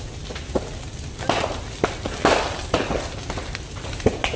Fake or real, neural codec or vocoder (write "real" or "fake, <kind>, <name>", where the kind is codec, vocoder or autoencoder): real